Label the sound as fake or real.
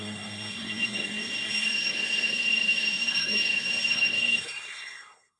fake